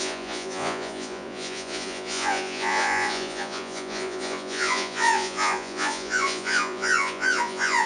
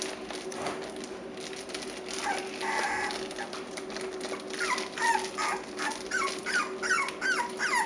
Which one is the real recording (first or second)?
second